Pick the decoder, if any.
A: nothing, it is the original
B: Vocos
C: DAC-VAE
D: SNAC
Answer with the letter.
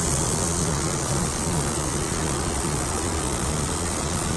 B